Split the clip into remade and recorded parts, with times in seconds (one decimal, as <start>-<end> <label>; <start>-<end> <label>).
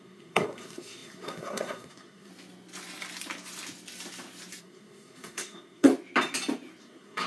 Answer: 0.0-2.3 remade; 2.3-4.6 recorded; 4.6-5.9 remade; 5.9-6.8 recorded; 6.8-7.3 remade